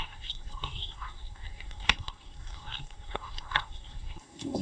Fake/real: fake